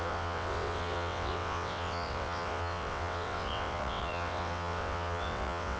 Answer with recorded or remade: remade